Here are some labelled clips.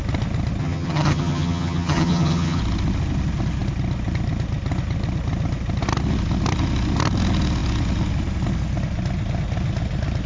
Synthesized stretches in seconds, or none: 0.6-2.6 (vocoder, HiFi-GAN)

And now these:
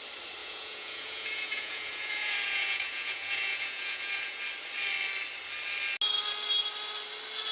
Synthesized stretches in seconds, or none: 0.4-4.4 (vocoder, Vocos)

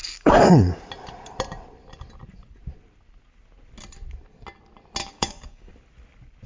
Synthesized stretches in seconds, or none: 0.0-0.8 (codec, DAC); 5.0-5.7

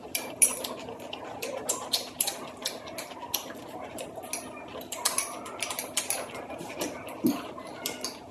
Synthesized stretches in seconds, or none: none